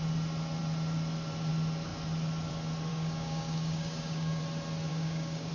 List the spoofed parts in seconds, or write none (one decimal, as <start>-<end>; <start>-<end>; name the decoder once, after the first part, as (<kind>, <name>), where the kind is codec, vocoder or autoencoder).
2.9-4.4 (codec, DAC); 4.9-5.5